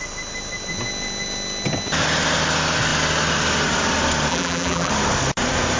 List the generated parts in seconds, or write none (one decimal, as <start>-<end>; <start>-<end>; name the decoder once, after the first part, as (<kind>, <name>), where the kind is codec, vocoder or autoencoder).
4.3-4.9 (vocoder, BigVGAN v2)